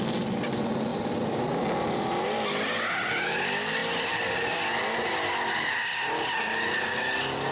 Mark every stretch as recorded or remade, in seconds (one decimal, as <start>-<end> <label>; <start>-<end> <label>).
0.0-7.5 recorded